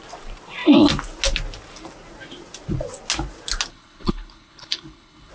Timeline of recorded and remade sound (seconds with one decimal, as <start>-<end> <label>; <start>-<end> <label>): 0.0-3.7 recorded; 3.7-5.3 remade